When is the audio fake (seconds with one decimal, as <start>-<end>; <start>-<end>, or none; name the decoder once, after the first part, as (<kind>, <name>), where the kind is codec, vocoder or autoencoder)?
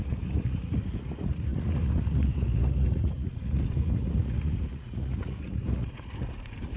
0.0-6.8 (vocoder, Vocos)